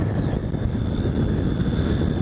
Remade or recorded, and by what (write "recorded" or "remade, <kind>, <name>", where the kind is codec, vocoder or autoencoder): recorded